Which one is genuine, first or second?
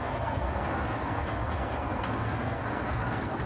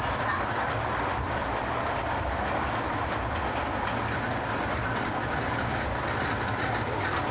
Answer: second